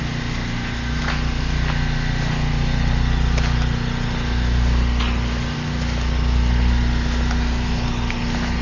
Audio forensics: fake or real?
real